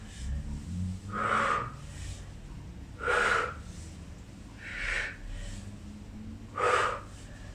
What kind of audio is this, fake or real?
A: real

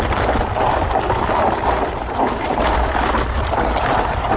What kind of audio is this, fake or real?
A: real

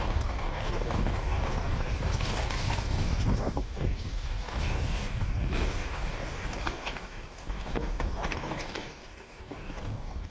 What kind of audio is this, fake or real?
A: fake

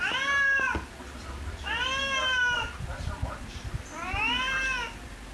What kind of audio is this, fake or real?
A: real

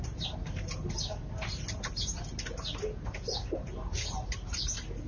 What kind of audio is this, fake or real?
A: real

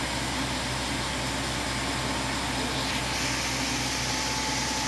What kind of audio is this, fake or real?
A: real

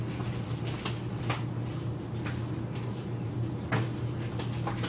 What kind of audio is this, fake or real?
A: real